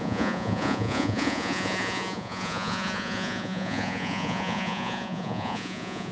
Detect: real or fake fake